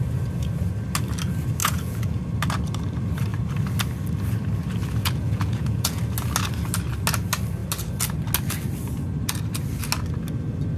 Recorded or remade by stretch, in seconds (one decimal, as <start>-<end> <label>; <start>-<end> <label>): 0.0-1.6 recorded; 1.6-2.2 remade; 2.2-5.0 recorded; 5.0-6.0 remade; 6.0-10.8 recorded